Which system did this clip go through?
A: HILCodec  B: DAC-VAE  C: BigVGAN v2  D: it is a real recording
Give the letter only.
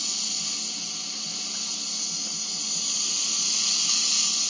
D